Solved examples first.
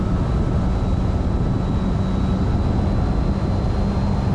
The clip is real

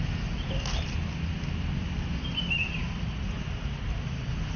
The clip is real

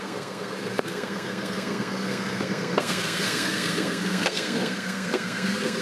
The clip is fake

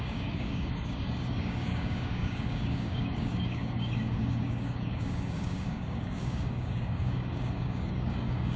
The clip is fake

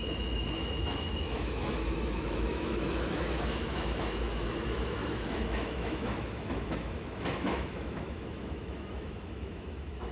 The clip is fake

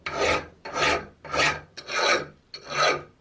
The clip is real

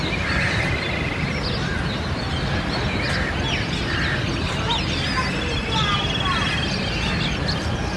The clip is real